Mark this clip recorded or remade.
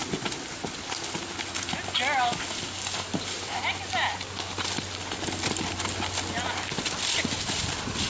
recorded